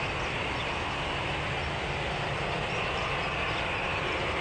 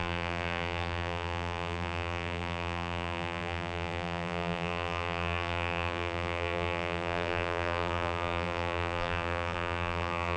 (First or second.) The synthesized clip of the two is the second